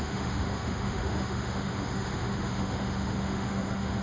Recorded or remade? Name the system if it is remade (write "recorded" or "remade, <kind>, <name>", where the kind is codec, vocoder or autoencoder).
remade, autoencoder, DAC-VAE